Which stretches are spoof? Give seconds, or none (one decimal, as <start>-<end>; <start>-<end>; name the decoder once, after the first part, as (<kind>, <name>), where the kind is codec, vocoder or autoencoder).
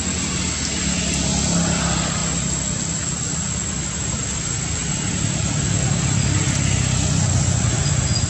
4.8-5.4 (vocoder, BigVGAN v2)